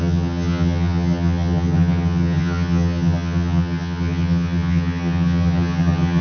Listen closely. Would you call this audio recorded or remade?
remade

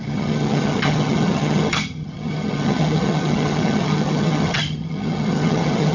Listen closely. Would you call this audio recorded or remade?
remade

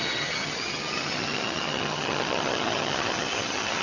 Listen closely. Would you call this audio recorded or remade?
remade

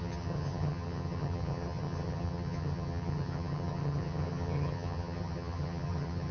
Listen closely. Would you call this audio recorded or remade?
remade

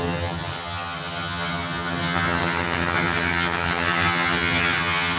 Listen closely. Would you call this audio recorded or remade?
remade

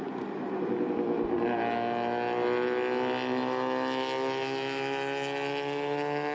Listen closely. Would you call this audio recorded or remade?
recorded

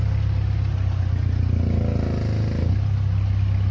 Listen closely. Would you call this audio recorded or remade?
recorded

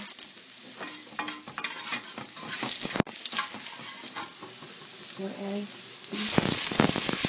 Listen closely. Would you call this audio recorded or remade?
recorded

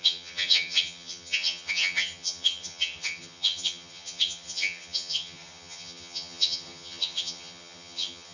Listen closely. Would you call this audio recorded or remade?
remade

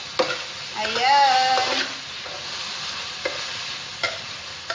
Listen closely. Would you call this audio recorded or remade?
recorded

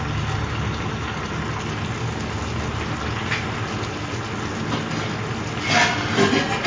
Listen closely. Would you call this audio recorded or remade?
recorded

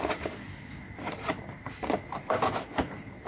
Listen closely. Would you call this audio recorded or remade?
recorded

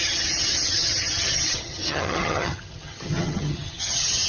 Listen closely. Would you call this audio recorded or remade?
remade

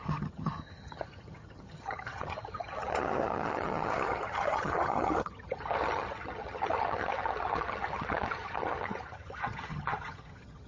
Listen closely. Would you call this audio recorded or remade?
remade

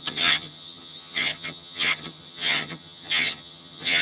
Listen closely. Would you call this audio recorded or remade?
remade